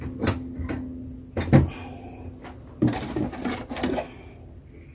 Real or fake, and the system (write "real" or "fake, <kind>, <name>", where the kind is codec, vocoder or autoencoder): real